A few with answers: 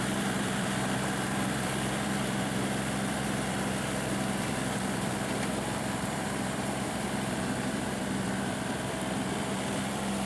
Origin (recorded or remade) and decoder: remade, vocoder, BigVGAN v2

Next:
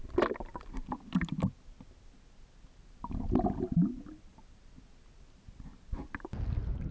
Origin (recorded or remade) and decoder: recorded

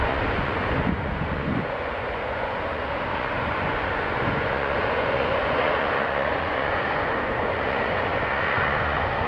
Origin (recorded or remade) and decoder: remade, vocoder, Vocos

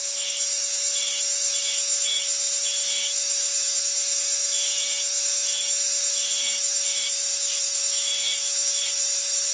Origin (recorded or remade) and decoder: remade, autoencoder, DAC-VAE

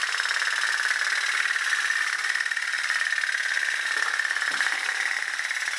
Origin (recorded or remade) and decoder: recorded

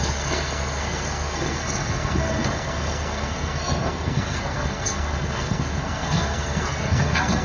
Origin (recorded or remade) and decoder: remade, codec, SNAC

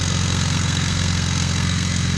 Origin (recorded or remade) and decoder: remade, codec, SNAC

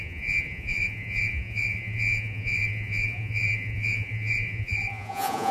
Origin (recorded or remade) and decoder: remade, vocoder, Vocos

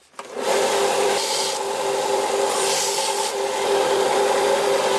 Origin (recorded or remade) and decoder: remade, vocoder, BigVGAN v2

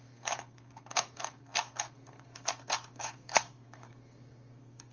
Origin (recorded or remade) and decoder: remade, codec, SNAC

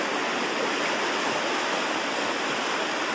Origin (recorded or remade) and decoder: recorded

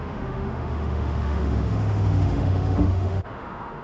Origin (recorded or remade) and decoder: remade, autoencoder, DAC-VAE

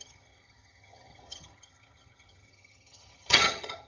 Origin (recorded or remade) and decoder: remade, vocoder, HiFi-GAN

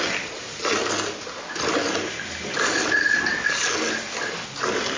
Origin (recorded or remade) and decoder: recorded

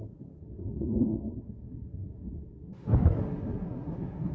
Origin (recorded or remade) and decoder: remade, codec, SNAC